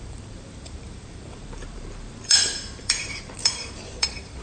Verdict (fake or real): fake